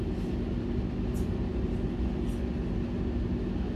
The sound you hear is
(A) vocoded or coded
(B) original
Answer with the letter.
B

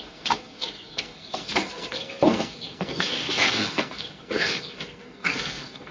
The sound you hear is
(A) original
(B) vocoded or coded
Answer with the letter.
B